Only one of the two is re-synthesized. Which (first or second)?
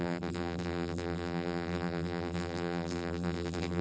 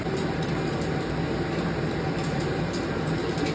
first